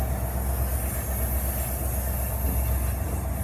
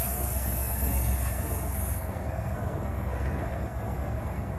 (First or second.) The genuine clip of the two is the first